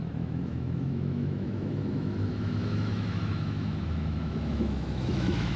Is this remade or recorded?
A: remade